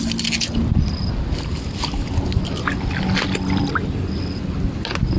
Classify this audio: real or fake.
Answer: real